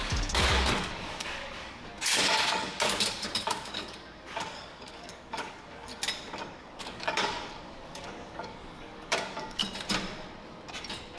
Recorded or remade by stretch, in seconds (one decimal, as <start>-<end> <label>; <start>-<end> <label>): 0.0-5.9 remade; 5.9-6.6 recorded; 6.6-9.6 remade; 9.6-11.2 recorded